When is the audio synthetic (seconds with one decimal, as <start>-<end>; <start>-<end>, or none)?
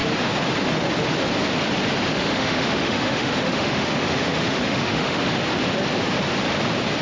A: 2.1-5.2